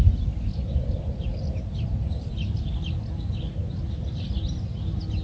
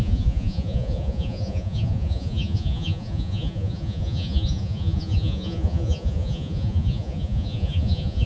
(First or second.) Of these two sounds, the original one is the first